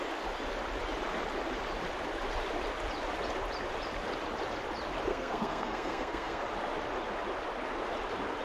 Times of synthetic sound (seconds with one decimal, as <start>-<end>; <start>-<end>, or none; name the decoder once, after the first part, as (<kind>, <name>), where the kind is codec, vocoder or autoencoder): 5.1-6.4 (codec, SNAC)